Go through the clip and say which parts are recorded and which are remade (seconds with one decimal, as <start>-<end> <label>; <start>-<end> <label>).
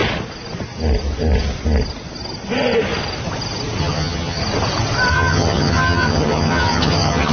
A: 0.0-3.8 recorded; 3.8-4.4 remade; 4.4-5.1 recorded; 5.1-7.3 remade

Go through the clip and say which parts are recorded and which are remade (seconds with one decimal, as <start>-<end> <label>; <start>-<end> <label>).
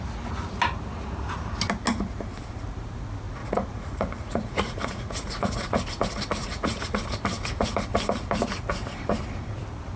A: 0.0-3.4 recorded; 3.4-5.8 remade; 5.8-6.4 recorded; 6.4-7.0 remade; 7.0-10.0 recorded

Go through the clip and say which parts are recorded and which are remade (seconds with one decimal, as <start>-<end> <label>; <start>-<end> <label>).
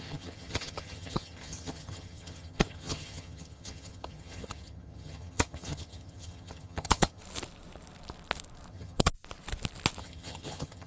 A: 0.0-7.2 remade; 7.2-8.7 recorded; 8.7-9.1 remade; 9.1-10.0 recorded; 10.0-10.9 remade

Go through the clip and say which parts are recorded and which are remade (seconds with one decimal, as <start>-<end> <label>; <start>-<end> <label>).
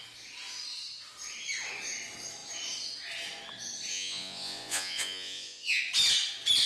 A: 0.0-3.9 recorded; 3.9-5.8 remade; 5.8-6.7 recorded